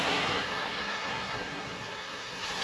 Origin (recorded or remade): remade